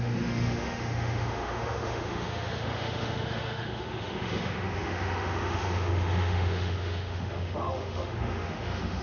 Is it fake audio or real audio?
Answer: fake